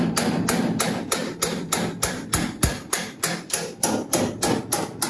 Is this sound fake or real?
fake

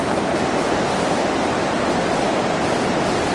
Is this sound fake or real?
real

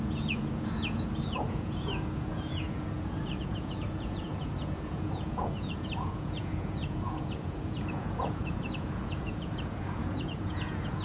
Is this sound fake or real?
fake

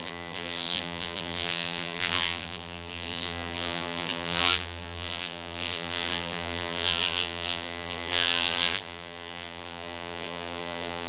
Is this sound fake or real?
fake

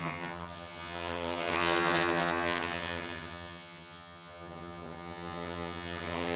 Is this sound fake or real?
fake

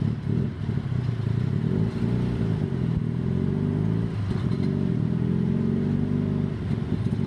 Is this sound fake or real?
real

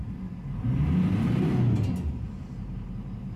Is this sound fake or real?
real